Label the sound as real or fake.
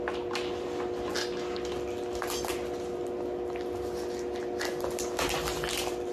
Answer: real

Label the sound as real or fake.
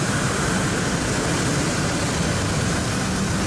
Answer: real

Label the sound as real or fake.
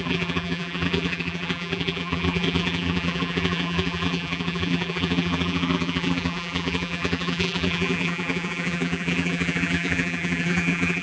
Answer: fake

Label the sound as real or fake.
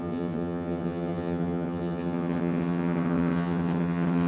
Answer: fake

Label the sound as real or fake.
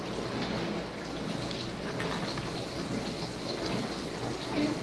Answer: real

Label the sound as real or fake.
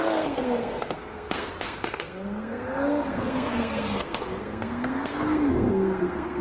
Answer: fake